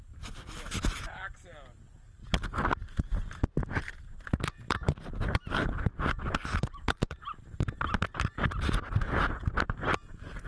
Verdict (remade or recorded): recorded